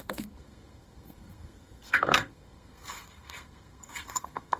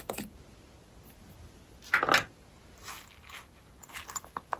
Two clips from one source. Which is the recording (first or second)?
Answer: second